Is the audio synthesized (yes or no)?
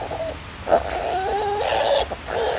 no